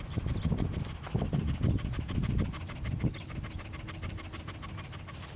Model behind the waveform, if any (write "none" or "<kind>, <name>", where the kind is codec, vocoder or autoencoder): none